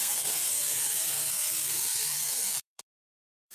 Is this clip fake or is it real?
fake